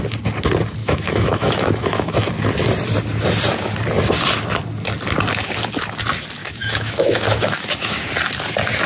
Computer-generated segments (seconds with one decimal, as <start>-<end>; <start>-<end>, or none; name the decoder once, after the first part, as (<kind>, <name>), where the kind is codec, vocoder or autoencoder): 0.8-2.2 (autoencoder, DAC-VAE); 6.4-8.1